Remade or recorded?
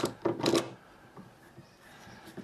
recorded